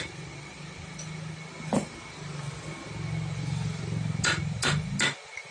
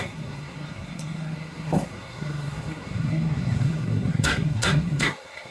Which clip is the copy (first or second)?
second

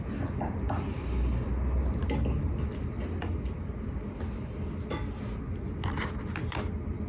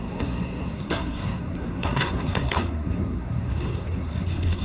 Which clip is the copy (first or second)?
second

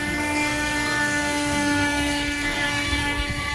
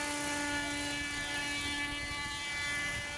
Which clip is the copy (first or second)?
first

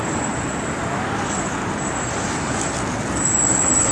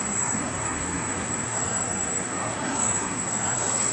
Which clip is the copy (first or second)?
second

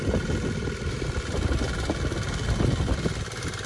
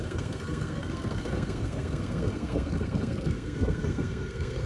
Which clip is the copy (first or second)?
second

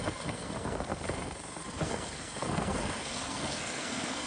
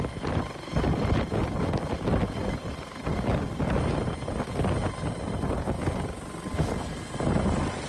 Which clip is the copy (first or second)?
first